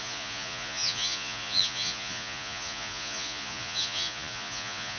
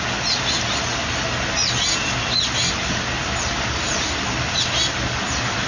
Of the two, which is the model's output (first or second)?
first